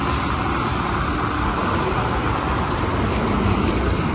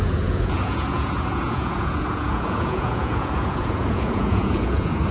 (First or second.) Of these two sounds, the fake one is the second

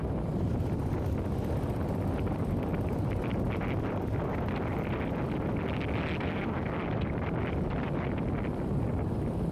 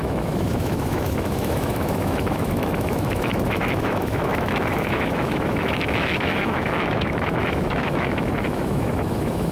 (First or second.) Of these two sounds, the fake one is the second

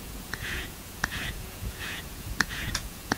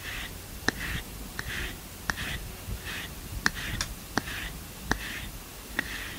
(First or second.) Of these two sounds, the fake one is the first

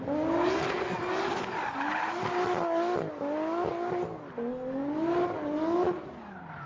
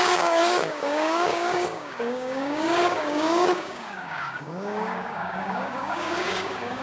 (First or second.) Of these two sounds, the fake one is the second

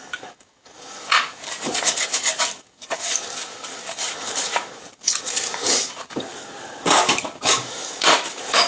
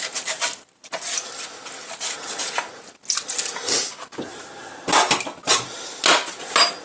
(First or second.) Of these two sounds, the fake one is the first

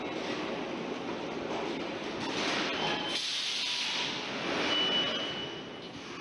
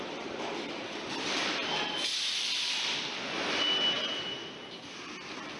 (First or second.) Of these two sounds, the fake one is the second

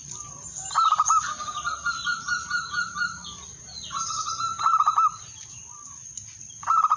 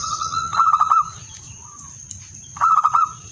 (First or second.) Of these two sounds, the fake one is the second